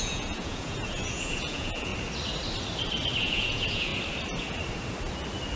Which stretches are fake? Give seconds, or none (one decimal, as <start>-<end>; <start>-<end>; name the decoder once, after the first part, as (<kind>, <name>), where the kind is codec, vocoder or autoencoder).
0.0-1.9 (vocoder, Vocos); 3.2-3.9